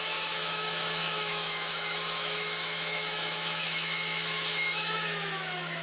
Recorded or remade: remade